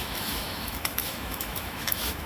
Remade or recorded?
remade